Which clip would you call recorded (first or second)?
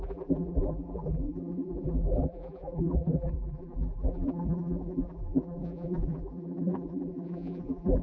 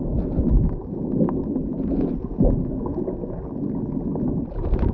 second